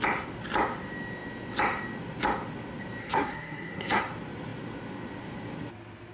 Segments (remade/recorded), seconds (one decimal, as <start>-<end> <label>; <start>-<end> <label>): 0.0-3.0 recorded; 3.0-4.0 remade; 4.0-6.1 recorded

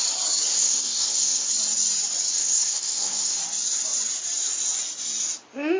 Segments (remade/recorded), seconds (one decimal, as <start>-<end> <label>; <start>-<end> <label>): 0.0-0.5 recorded; 0.5-1.5 remade; 1.5-2.3 recorded; 2.3-3.4 remade; 3.4-5.8 recorded